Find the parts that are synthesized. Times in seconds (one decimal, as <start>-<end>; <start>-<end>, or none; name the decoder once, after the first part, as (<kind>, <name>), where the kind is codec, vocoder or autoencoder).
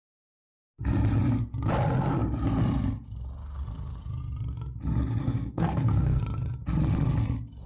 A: 5.2-6.2 (codec, SNAC)